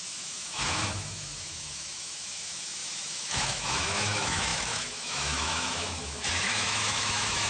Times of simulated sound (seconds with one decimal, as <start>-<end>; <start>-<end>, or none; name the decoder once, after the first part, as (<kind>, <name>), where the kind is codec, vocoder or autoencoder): 0.0-7.5 (autoencoder, DAC-VAE)